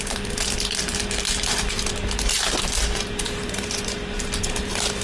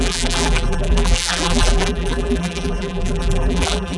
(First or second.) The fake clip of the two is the second